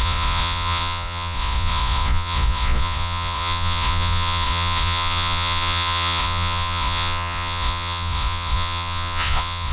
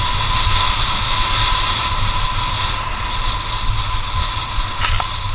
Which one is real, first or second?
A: second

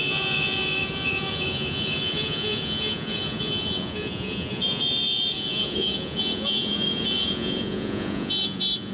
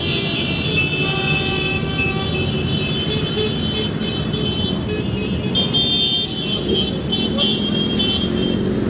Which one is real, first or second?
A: second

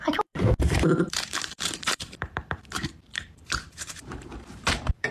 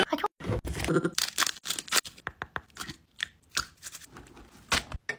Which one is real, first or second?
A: second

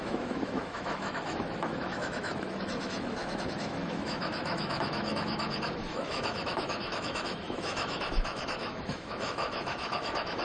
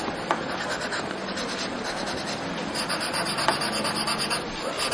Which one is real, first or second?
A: second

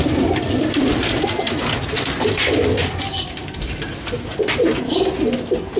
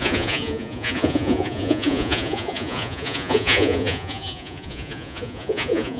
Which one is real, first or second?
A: first